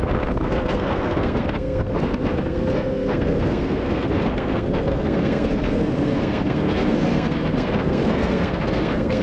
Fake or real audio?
fake